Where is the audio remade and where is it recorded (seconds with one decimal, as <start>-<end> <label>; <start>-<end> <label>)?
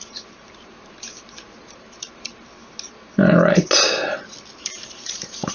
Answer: 0.0-2.6 remade; 2.6-4.5 recorded; 4.5-5.5 remade